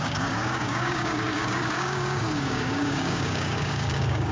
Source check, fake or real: fake